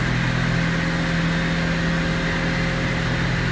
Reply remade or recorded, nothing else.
recorded